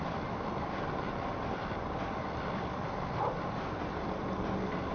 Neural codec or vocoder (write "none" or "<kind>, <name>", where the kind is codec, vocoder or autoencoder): vocoder, BigVGAN v2